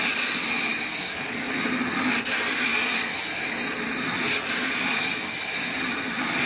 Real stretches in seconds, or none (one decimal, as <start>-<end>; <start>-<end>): 0.0-0.7; 1.2-6.5